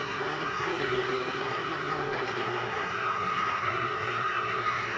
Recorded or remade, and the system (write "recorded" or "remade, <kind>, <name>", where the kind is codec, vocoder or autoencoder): remade, codec, SNAC